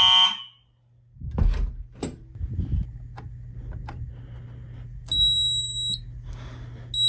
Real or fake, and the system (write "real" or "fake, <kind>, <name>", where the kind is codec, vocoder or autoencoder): real